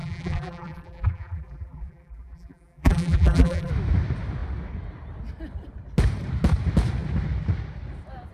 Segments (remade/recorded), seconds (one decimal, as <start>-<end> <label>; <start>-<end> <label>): 0.0-3.7 remade; 3.7-8.3 recorded